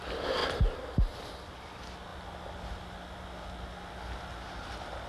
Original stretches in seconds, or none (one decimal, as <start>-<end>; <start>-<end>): 0.0-5.1